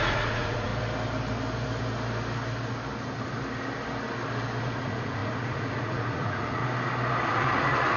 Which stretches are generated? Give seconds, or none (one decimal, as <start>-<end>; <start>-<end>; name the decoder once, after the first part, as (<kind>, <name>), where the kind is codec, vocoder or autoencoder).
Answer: 0.0-0.7 (vocoder, Vocos); 4.6-6.6; 7.3-8.0